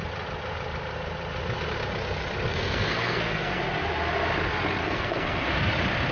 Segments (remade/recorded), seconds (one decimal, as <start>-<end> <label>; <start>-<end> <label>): 0.0-2.5 recorded; 2.5-3.6 remade; 3.6-4.8 recorded; 4.8-5.5 remade; 5.5-6.1 recorded